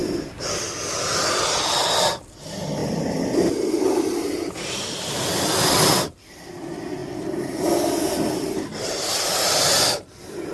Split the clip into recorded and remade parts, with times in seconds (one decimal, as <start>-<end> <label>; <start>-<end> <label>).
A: 0.0-10.5 recorded